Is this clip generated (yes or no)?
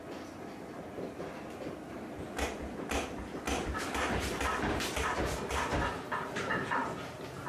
no